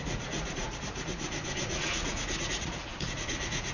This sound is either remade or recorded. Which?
remade